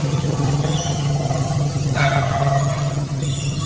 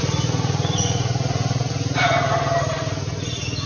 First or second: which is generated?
first